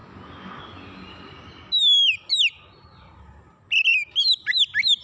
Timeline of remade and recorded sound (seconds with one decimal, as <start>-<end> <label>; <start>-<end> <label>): 0.0-5.0 recorded